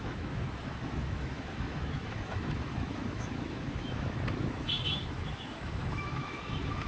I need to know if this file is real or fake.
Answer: fake